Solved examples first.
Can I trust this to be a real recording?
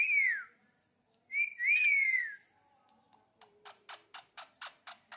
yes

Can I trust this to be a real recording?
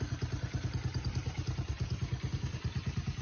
no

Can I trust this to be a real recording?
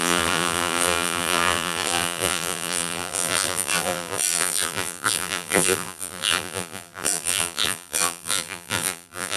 no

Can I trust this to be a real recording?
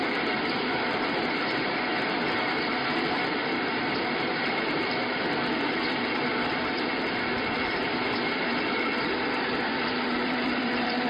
no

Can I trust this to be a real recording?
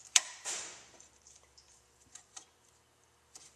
no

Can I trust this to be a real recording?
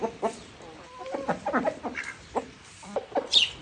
no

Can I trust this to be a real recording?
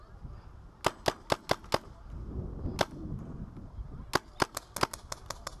yes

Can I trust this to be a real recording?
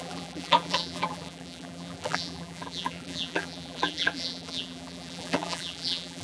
no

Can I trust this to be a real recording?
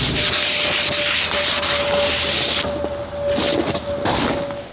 yes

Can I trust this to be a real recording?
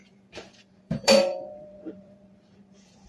no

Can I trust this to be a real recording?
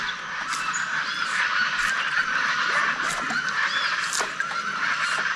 yes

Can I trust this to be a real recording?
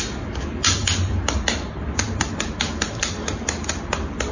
no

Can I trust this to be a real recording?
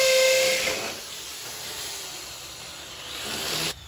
yes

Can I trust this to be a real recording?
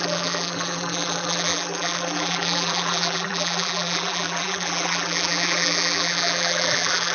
no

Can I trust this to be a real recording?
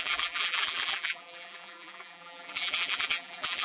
no